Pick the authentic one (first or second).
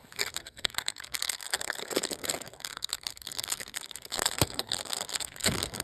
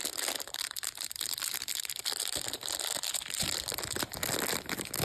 second